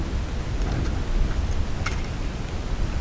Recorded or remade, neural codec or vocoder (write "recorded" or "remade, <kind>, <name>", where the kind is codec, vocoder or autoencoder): recorded